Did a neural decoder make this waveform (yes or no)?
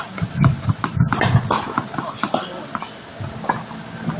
no